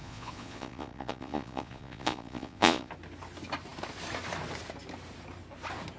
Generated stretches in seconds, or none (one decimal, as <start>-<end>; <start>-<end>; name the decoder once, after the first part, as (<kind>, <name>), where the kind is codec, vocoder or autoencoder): 0.0-2.9 (vocoder, Vocos)

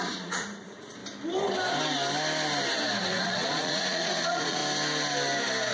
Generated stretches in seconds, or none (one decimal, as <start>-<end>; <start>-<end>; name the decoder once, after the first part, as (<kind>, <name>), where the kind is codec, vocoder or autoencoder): 0.0-1.0 (vocoder, Vocos); 3.0-4.6

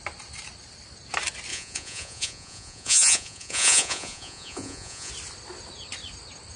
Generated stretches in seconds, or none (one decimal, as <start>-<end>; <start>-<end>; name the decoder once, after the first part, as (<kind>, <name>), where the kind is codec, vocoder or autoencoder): 1.5-5.1 (vocoder, Vocos)

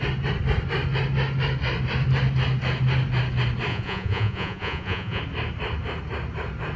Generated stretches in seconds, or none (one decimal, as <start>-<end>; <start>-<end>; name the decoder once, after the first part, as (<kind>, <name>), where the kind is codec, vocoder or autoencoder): 3.7-5.2 (vocoder, Vocos)

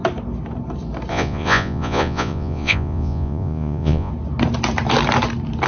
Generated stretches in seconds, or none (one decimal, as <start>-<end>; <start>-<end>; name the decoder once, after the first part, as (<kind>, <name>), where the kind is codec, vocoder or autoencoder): 1.1-4.1 (vocoder, Vocos)

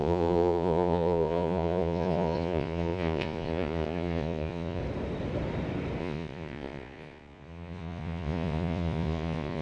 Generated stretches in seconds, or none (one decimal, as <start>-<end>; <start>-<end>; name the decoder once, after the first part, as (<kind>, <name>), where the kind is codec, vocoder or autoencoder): 0.0-4.8 (vocoder, Vocos); 6.0-9.6

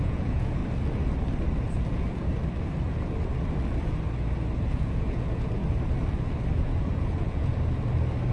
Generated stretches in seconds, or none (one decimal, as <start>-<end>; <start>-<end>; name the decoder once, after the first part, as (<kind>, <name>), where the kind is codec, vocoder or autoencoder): 0.0-0.6 (vocoder, Vocos); 4.7-5.6; 6.6-7.5

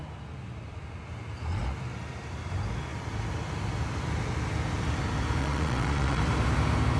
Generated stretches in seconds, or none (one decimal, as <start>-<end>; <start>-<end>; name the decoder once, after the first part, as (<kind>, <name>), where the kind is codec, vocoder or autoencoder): 5.4-6.2 (vocoder, Vocos)